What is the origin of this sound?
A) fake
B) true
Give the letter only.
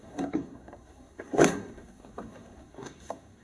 A